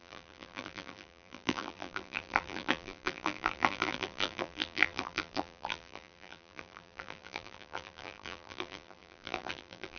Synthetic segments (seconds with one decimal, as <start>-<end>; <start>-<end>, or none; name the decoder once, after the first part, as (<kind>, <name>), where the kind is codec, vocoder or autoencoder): 0.0-10.0 (vocoder, BigVGAN v2)